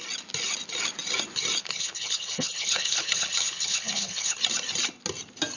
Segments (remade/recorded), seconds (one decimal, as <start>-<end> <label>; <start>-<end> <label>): 0.0-1.6 recorded; 1.6-4.4 remade; 4.4-5.6 recorded